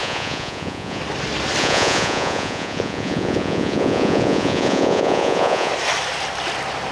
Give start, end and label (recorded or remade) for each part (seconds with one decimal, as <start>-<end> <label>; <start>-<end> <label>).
0.0-1.0 remade; 1.0-1.6 recorded; 1.6-5.7 remade; 5.7-6.9 recorded